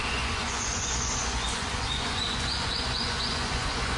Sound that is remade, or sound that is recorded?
remade